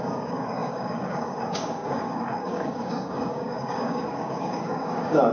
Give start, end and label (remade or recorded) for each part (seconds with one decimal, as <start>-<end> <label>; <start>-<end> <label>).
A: 0.0-5.3 remade